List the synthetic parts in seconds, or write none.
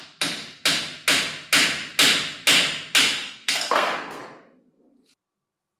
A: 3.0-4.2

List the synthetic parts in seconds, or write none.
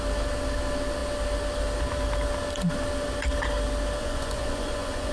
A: 4.0-5.1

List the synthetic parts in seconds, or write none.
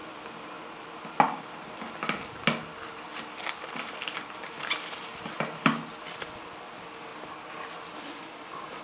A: none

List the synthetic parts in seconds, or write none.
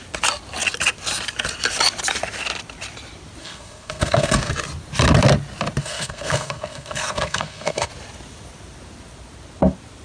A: 3.4-4.5; 5.8-7.9